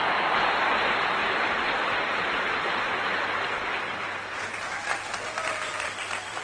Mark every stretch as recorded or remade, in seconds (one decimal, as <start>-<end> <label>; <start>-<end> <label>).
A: 0.0-6.4 recorded